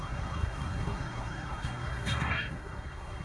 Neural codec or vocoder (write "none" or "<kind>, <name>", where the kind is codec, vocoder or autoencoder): codec, SNAC